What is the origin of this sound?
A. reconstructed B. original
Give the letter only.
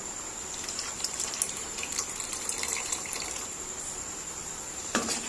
A